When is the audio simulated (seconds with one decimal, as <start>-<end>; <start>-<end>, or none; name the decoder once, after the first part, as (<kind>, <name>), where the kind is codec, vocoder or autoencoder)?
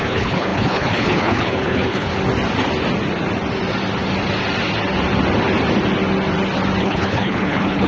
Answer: 0.0-2.1 (codec, HILCodec); 6.8-7.9